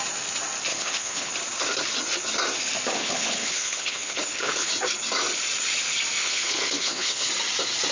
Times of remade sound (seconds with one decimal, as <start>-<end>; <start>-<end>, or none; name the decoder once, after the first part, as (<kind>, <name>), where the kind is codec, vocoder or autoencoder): 0.7-1.3 (codec, HILCodec); 3.0-4.7; 6.2-7.3